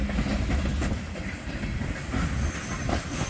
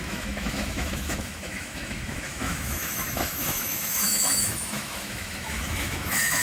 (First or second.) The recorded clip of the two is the first